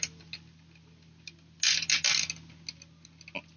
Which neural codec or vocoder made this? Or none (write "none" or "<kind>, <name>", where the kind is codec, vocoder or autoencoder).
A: none